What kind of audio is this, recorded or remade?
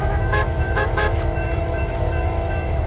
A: remade